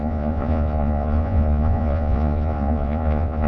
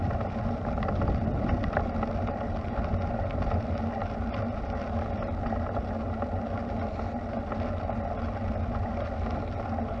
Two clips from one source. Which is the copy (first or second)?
first